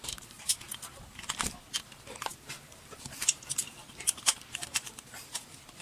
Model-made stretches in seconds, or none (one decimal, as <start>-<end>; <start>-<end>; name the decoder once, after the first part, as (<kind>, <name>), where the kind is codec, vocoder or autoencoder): 0.0-5.8 (vocoder, BigVGAN v2)

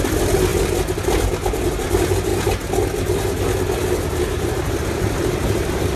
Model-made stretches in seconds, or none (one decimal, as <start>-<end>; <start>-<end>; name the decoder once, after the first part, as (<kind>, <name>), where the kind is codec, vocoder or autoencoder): 0.0-2.3 (vocoder, BigVGAN v2); 4.4-6.0